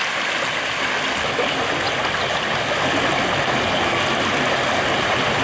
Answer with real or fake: real